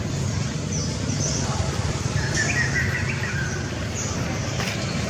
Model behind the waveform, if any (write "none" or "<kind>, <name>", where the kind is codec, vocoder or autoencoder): none